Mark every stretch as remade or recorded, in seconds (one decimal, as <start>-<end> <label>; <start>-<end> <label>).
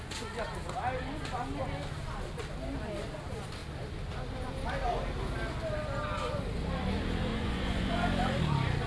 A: 0.0-7.3 recorded; 7.3-7.9 remade; 7.9-8.9 recorded